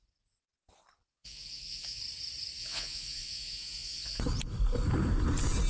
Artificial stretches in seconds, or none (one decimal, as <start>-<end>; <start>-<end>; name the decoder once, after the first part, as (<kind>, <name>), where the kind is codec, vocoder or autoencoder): 1.1-2.0 (vocoder, Vocos); 2.6-4.2